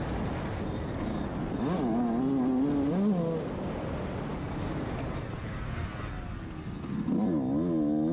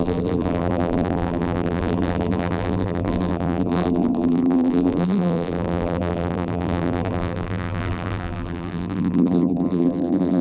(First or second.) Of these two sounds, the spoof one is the second